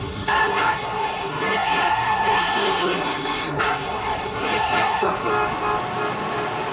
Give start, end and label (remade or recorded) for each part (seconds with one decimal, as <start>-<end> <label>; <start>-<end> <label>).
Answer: 0.0-5.3 remade; 5.3-6.7 recorded